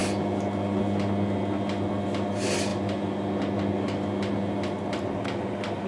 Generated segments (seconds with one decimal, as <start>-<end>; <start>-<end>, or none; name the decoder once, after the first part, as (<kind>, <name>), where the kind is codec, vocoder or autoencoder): none

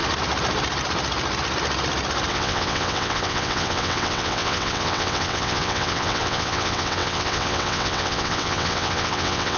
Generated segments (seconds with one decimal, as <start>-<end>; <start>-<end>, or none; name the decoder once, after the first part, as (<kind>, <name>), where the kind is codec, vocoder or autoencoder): 2.3-9.6 (vocoder, WaveNeXt)

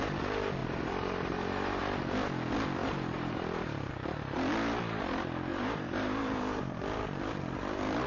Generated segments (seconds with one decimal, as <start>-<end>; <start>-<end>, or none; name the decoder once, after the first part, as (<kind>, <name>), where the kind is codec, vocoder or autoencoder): 0.6-1.8 (vocoder, BigVGAN v2); 2.8-3.9; 5.5-6.8